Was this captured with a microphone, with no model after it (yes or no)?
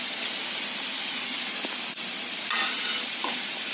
yes